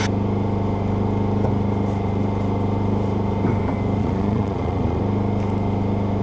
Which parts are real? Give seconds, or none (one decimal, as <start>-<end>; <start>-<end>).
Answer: 0.0-4.0; 5.0-6.2